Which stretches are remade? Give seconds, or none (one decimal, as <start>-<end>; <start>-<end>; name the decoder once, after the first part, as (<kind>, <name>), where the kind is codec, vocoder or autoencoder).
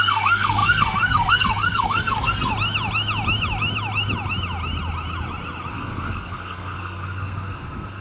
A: 0.0-2.5 (codec, SNAC); 5.7-8.0